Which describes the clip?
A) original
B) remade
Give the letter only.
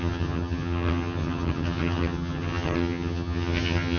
B